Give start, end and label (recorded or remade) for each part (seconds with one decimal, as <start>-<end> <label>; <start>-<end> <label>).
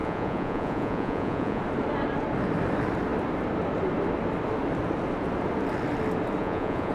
0.0-1.6 remade; 1.6-6.4 recorded; 6.4-6.9 remade